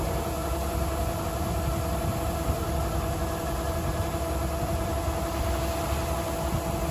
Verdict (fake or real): real